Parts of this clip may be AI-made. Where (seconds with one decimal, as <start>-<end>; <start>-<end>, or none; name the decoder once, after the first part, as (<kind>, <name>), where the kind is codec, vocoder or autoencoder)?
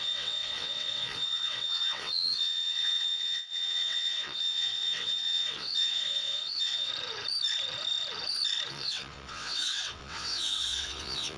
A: 0.0-6.9 (vocoder, WaveNeXt); 8.7-11.4